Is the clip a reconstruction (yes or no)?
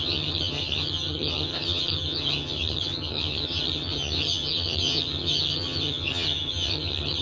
yes